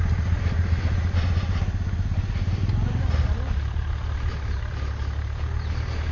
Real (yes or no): yes